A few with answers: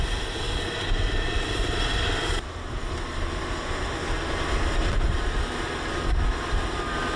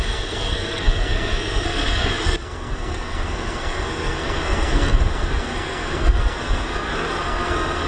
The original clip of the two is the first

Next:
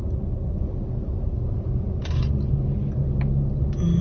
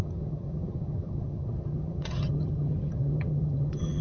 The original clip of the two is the first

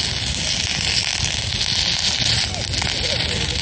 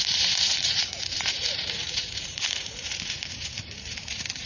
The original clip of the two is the first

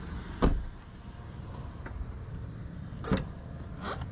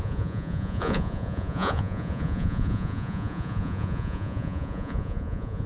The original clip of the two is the first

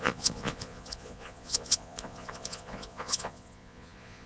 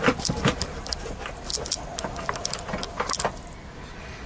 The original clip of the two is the second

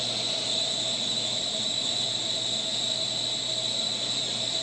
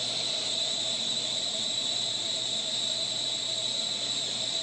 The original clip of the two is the first